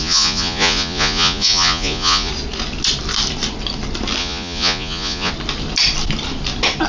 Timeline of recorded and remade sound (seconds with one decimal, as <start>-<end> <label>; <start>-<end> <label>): 0.0-2.3 remade; 2.3-4.2 recorded; 4.2-5.3 remade; 5.3-6.9 recorded